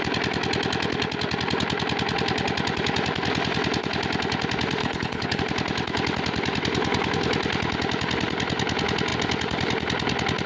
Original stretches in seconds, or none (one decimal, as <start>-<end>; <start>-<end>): 0.0-4.8; 5.4-10.5